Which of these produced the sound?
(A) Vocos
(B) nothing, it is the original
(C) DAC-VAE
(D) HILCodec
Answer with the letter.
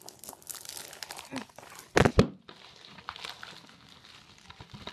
B